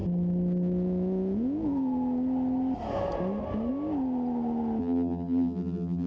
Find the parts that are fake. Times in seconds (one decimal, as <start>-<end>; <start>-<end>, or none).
4.8-6.1